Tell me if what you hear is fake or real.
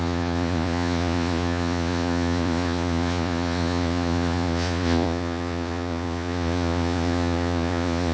fake